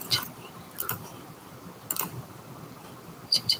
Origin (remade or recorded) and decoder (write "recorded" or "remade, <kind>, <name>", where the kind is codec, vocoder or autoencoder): remade, vocoder, BigVGAN v2